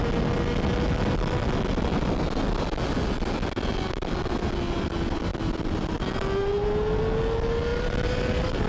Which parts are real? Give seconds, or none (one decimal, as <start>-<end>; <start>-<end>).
0.0-7.7